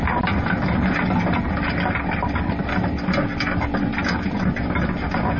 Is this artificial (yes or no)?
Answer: no